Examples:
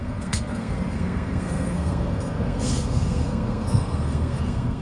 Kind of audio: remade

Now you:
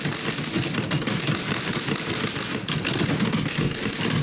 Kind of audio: recorded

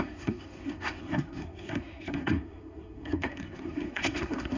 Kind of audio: remade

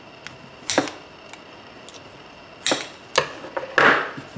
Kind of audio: recorded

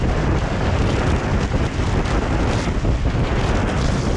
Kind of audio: recorded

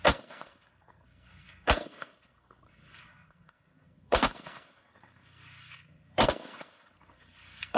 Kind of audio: remade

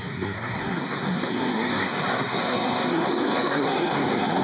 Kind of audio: remade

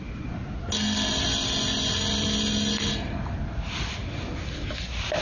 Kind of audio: recorded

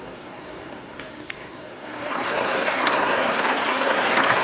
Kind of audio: remade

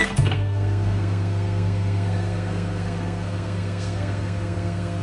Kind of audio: remade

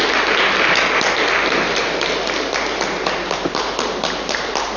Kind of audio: recorded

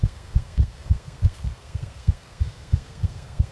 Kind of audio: remade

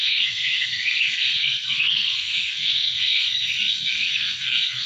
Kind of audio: remade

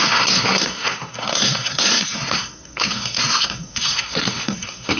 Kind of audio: remade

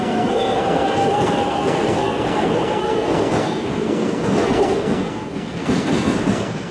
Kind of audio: remade